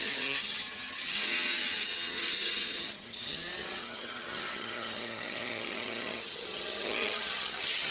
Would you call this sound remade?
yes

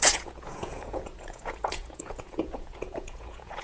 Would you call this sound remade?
yes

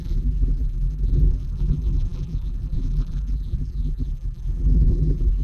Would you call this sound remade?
yes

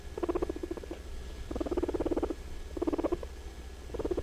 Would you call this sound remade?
no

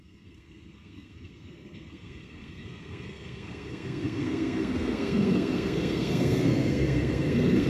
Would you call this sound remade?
yes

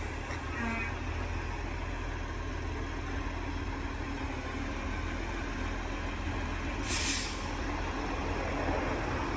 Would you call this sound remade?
no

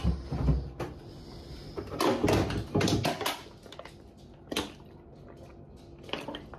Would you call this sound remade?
no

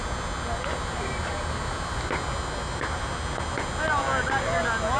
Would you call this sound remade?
no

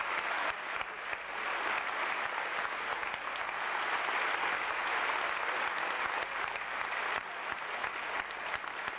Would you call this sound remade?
no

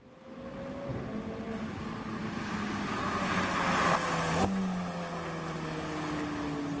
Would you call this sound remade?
no